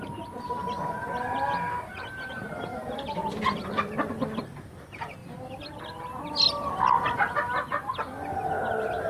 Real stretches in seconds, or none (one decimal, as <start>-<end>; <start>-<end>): 0.0-5.2; 5.8-9.1